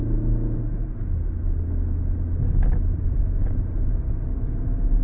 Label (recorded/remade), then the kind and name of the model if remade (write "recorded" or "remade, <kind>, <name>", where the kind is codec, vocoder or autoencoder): recorded